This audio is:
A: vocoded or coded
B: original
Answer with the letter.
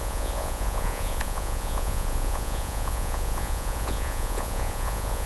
A